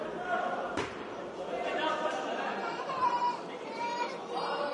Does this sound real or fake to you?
fake